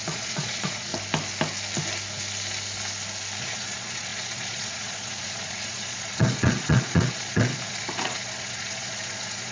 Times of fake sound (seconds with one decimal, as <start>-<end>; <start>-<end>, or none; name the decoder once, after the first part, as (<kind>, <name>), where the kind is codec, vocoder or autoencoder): 0.0-0.9 (vocoder, Vocos); 3.4-9.5